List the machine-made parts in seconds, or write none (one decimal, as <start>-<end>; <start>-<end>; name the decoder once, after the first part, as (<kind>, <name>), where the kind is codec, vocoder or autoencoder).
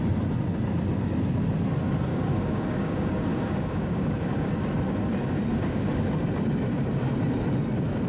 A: 2.1-4.5 (codec, DAC); 5.5-6.0